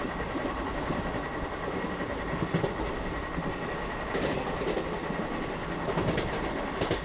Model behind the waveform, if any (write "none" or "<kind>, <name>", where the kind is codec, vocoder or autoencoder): none